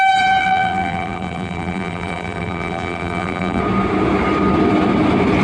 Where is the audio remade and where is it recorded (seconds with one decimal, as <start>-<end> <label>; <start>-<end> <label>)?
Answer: 0.0-0.4 recorded; 0.4-3.6 remade; 3.6-5.4 recorded